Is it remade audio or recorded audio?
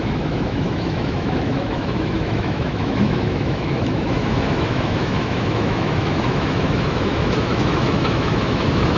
remade